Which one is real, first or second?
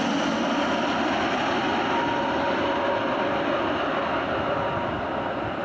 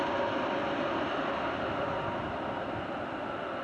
first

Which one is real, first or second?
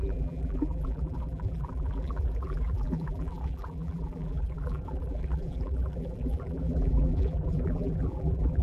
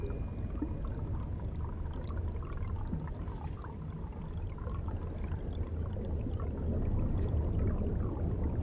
second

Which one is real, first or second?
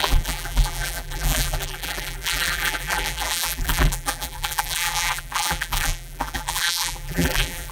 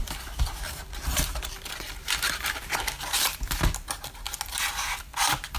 second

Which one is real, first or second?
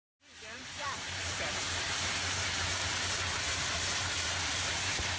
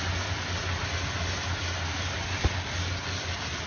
second